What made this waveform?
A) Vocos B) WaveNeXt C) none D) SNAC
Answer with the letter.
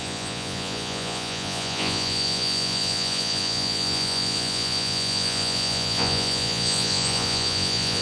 A